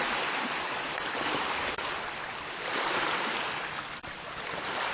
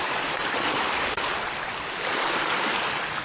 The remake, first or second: second